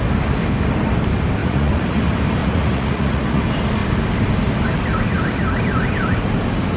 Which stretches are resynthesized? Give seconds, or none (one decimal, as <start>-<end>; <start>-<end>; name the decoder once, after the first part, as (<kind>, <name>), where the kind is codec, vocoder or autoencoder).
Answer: 1.4-2.0 (vocoder, Vocos); 2.4-3.4